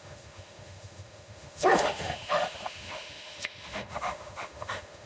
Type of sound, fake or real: fake